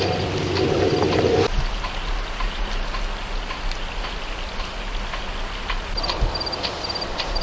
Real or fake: real